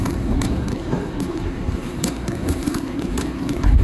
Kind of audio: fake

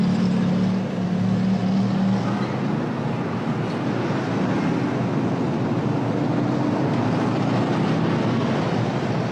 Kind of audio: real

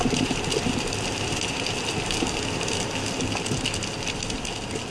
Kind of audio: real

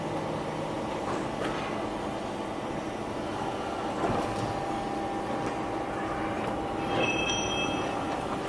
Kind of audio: real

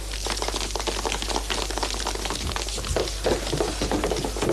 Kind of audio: real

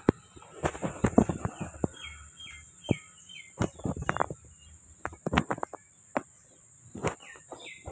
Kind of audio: real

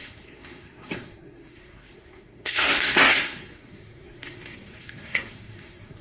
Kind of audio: fake